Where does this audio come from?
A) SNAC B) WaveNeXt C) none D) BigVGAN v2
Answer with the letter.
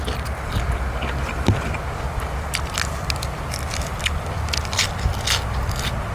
C